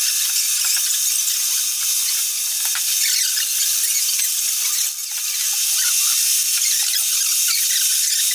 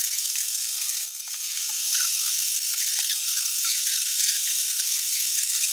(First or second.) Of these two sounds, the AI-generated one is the second